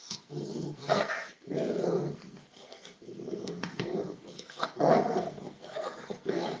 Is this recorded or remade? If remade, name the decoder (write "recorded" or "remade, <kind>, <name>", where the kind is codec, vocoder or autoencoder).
remade, codec, SNAC